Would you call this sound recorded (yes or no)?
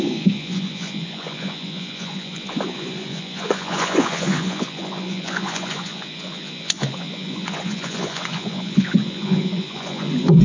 no